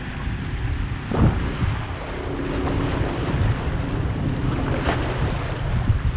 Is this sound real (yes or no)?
yes